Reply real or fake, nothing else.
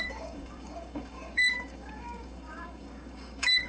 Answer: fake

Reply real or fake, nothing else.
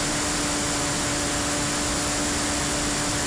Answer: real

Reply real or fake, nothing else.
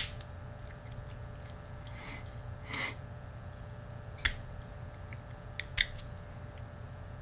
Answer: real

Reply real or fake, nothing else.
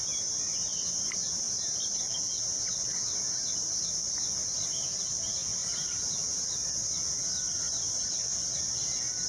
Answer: real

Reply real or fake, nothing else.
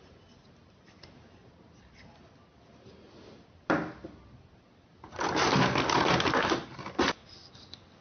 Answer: real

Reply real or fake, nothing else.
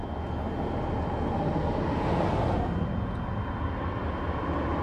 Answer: real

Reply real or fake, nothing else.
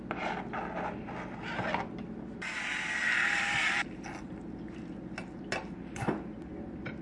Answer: real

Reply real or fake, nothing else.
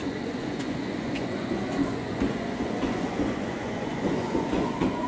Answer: fake